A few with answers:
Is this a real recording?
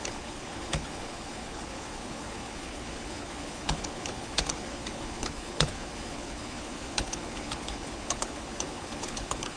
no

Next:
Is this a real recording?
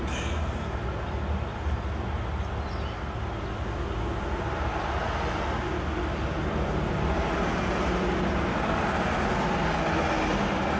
yes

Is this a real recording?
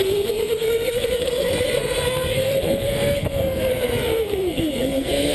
no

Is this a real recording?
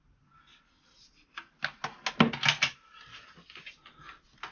yes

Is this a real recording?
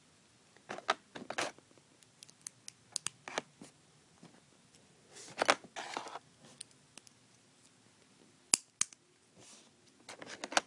yes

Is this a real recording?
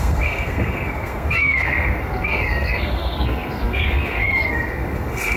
no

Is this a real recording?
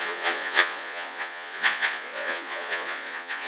no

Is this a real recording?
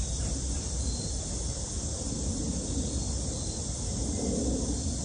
yes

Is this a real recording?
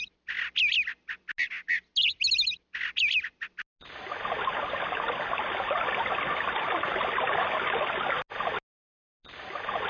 yes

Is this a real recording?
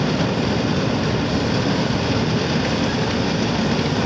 yes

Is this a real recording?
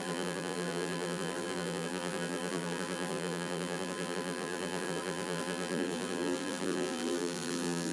no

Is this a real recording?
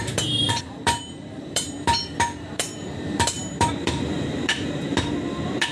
no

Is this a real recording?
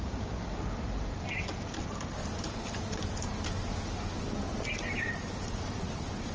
yes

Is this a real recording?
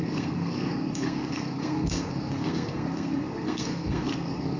no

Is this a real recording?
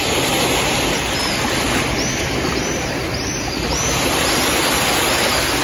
yes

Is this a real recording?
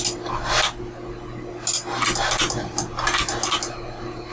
yes